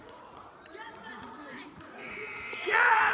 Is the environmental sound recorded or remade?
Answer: remade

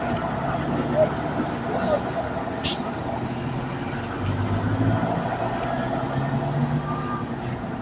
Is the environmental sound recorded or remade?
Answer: recorded